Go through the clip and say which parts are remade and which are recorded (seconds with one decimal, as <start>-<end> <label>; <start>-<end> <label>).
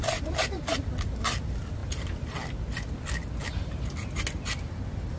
0.0-0.7 remade; 0.7-5.2 recorded